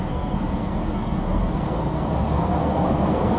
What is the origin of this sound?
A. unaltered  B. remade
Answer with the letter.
B